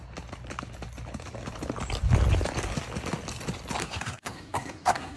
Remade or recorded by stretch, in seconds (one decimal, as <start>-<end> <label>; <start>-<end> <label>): 0.0-3.8 recorded; 3.8-5.2 remade